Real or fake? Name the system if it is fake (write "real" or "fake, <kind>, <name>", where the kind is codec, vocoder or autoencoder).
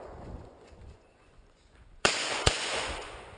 fake, vocoder, Vocos